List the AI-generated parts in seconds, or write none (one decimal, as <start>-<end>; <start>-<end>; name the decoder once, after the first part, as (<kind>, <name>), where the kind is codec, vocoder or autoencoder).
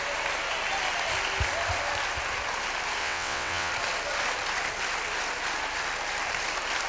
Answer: 3.0-3.7 (vocoder, WaveNeXt)